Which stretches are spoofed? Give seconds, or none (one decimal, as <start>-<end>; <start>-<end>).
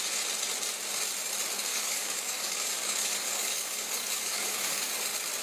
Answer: 1.7-4.9